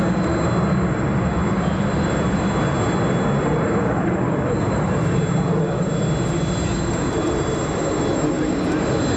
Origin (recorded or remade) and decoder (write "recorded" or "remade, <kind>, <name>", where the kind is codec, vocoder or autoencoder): recorded